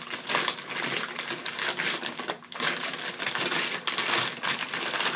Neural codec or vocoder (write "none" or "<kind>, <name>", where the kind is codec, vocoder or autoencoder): vocoder, BigVGAN v2